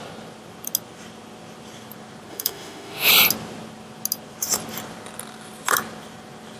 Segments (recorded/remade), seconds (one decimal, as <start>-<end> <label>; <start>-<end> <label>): 0.0-2.3 recorded; 2.3-3.1 remade; 3.1-6.6 recorded